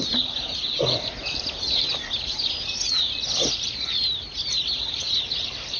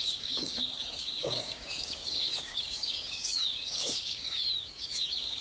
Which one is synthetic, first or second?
second